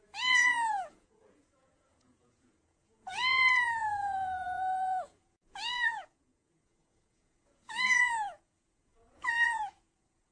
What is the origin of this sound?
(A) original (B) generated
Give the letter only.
B